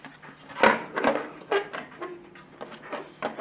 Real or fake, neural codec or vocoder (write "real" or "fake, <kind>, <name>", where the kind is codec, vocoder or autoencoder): real